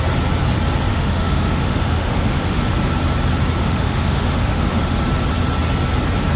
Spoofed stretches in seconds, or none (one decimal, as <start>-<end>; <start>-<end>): 0.9-2.6; 3.6-5.0